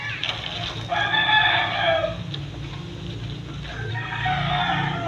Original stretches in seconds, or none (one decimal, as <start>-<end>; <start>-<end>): 0.0-3.9; 4.6-5.1